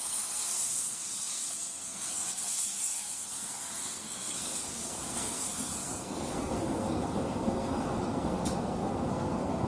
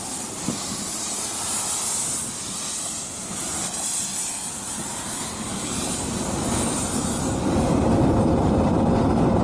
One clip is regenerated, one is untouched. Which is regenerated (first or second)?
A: first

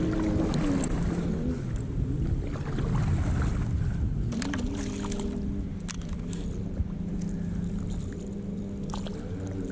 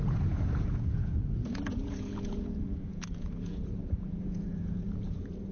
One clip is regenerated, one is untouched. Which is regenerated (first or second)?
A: second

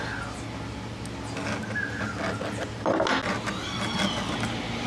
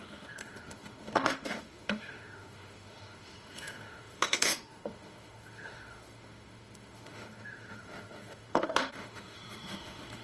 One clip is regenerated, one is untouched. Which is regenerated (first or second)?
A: second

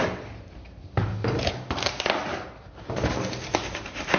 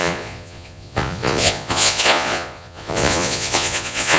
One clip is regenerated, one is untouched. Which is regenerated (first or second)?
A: second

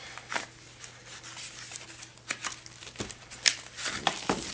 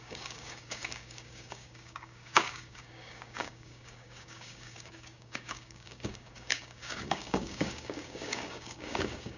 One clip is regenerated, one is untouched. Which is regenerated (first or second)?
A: second